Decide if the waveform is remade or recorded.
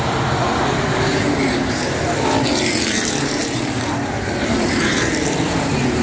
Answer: remade